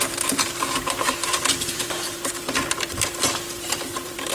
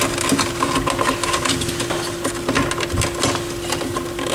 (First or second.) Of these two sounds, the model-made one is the first